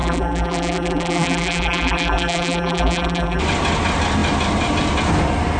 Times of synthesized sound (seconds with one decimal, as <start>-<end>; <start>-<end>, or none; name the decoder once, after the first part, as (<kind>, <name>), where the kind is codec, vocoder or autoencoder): 0.0-3.4 (vocoder, BigVGAN v2)